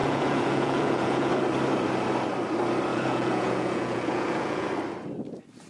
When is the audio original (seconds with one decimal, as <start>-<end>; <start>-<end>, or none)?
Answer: 1.3-2.9; 4.7-5.7